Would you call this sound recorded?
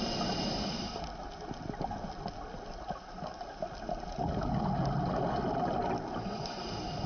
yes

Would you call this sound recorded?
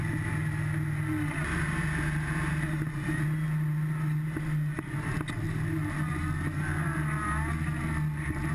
yes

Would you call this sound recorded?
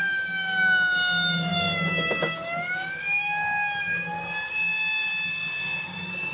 no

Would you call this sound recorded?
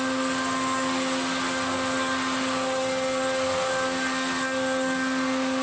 yes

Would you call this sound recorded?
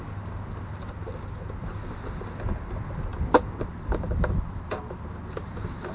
yes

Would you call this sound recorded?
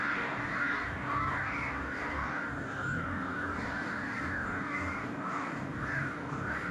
no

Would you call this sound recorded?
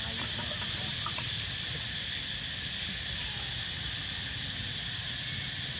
yes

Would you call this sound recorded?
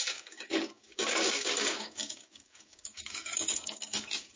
no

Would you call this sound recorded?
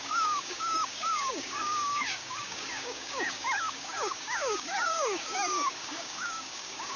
no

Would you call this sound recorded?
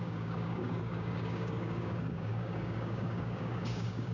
no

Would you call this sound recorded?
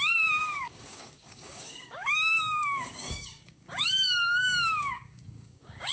no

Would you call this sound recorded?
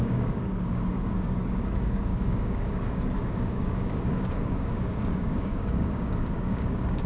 no